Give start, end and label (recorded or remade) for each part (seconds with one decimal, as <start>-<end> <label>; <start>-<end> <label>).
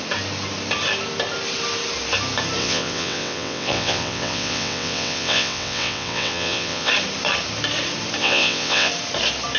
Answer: 0.0-2.6 recorded; 2.6-6.9 remade; 6.9-8.2 recorded; 8.2-8.9 remade; 8.9-9.6 recorded